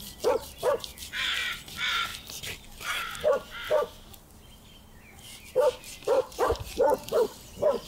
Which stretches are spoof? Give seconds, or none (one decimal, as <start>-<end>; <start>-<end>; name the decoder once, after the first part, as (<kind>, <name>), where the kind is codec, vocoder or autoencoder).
none

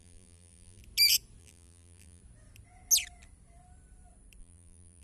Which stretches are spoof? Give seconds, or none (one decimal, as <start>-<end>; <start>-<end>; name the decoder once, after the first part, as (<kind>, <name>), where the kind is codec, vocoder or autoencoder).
0.0-0.8 (vocoder, BigVGAN v2); 1.4-2.2; 4.4-5.0

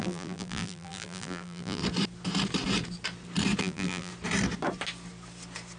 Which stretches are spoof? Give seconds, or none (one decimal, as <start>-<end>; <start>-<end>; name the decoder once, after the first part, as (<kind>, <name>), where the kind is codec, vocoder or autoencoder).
0.0-1.8 (vocoder, BigVGAN v2); 3.6-4.1

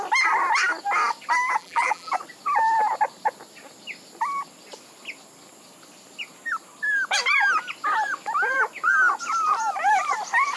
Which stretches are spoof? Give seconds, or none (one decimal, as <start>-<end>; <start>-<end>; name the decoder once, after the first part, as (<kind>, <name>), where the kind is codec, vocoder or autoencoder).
1.6-2.1 (vocoder, BigVGAN v2)

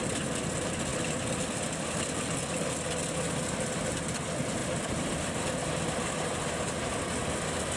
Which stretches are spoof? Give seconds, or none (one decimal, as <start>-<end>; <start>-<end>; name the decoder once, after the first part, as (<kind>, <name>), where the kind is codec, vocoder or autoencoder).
4.6-6.5 (vocoder, BigVGAN v2)